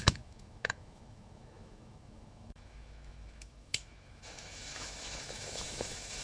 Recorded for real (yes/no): no